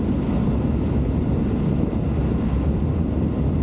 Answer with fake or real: real